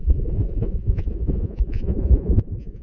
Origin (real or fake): fake